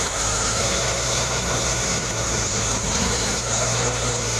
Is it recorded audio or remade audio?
remade